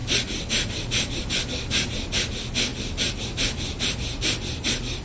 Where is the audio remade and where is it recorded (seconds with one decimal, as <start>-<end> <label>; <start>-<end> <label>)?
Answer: 0.0-5.0 recorded